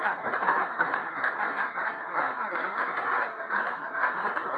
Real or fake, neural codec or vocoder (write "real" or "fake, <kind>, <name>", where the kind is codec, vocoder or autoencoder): fake, codec, SNAC